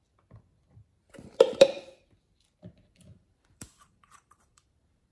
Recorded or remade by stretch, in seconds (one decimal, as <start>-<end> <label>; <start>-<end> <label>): 0.0-2.9 recorded; 2.9-5.1 remade